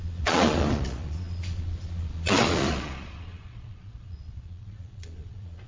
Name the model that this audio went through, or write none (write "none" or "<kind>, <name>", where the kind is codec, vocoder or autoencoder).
vocoder, Vocos